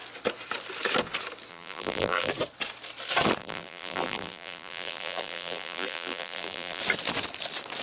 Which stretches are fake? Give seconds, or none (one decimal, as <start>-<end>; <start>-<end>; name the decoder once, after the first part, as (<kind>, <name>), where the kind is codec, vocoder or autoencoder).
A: 1.5-2.3 (vocoder, BigVGAN v2); 3.4-6.8